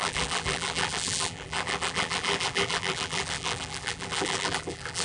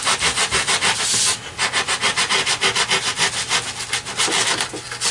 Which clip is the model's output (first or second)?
first